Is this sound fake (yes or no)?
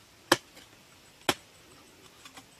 no